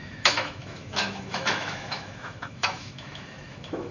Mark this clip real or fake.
fake